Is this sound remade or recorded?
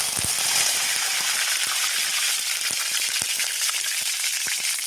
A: remade